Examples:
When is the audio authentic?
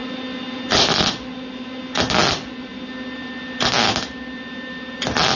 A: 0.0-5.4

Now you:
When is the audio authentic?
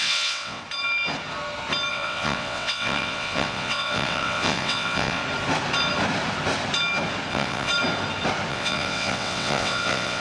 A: 0.6-1.9; 5.2-7.3; 7.7-8.5